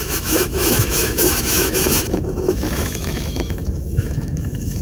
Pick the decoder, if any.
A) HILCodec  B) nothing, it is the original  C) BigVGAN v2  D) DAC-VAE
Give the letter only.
D